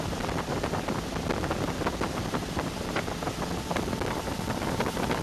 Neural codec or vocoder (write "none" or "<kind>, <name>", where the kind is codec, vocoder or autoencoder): none